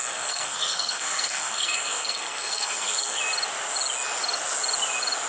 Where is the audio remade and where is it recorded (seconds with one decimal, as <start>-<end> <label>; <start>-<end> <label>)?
0.0-3.2 remade; 3.2-5.3 recorded